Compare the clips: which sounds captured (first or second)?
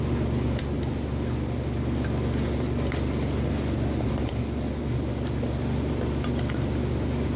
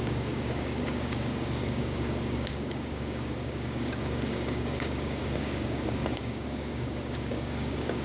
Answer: first